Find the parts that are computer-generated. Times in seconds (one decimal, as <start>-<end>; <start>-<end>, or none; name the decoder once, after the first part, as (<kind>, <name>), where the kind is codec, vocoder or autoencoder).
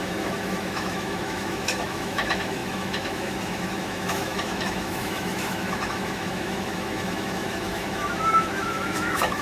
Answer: 0.0-9.4 (autoencoder, DAC-VAE)